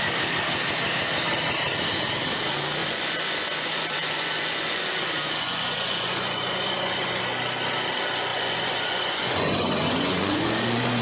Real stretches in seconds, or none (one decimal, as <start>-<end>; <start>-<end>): 0.0-2.8; 7.2-8.3